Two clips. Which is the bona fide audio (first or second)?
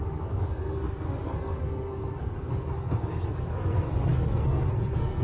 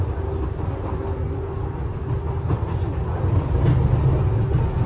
second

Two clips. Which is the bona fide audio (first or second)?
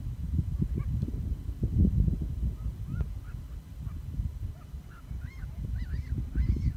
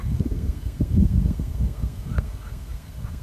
first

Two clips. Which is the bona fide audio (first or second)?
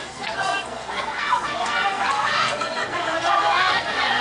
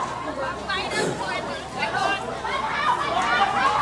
second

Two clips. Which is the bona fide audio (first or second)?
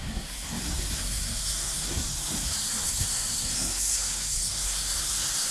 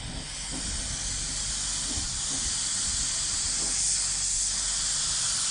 second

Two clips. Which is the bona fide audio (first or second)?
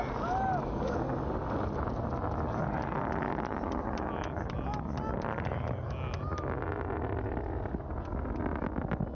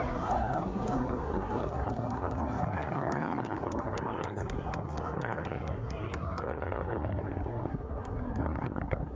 first